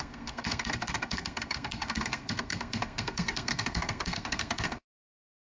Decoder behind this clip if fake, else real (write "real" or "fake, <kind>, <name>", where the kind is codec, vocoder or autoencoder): fake, codec, SNAC